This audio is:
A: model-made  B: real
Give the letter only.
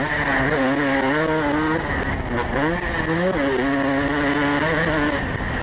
B